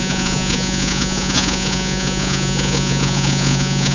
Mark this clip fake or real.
fake